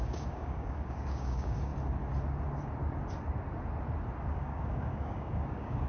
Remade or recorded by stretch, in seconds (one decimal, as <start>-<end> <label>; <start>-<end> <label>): 0.0-1.7 remade; 1.7-4.3 recorded; 4.3-5.9 remade